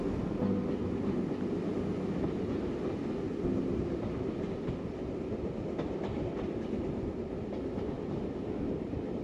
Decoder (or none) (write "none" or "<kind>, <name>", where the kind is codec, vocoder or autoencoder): none